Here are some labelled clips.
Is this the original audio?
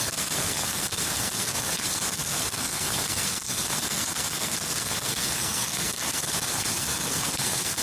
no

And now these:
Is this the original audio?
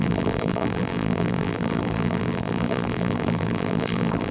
no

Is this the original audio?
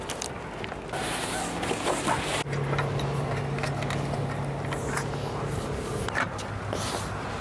yes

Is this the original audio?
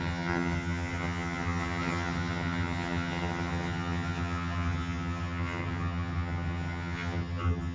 no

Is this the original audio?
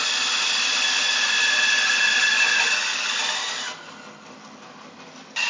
yes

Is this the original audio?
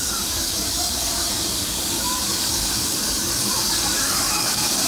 no